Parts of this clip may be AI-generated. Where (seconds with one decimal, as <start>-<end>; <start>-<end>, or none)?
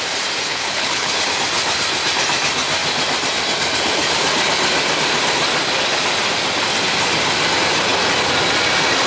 0.5-1.1